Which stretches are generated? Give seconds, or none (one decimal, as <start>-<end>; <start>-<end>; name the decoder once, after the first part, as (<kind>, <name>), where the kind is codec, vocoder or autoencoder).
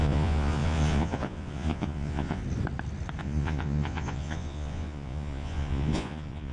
0.0-2.4 (vocoder, Vocos); 3.2-6.5